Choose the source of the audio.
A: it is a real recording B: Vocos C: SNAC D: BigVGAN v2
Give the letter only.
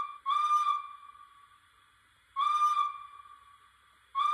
A